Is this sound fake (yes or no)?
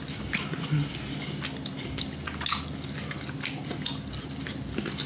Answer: no